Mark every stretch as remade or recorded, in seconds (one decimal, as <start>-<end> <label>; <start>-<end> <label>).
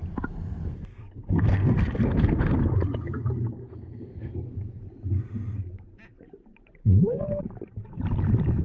0.0-0.7 recorded; 0.7-2.6 remade; 2.6-3.6 recorded; 3.6-4.8 remade; 4.8-6.8 recorded; 6.8-7.4 remade; 7.4-8.6 recorded